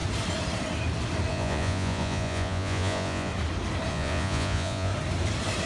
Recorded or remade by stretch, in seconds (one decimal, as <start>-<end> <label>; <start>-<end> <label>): 0.0-1.3 recorded; 1.3-3.3 remade; 3.3-3.9 recorded; 3.9-4.9 remade; 4.9-5.7 recorded